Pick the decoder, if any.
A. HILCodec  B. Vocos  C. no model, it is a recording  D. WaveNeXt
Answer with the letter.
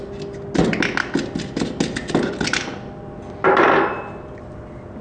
C